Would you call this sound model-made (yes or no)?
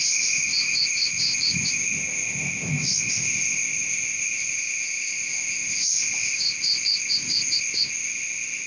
yes